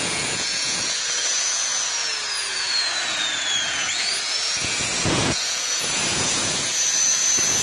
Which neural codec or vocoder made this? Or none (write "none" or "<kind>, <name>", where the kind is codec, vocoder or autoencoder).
vocoder, Vocos